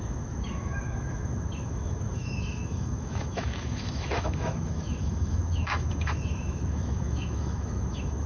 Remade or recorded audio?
remade